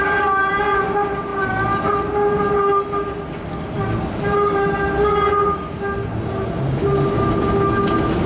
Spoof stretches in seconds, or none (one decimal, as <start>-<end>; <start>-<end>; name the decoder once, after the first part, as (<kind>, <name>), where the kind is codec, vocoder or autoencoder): none